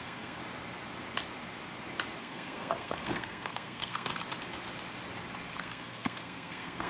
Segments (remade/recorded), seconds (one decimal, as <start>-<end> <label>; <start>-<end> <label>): 0.0-0.4 remade; 0.4-2.2 recorded; 2.2-4.1 remade; 4.1-5.6 recorded; 5.6-6.9 remade